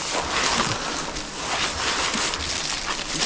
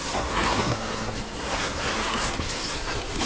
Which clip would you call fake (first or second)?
second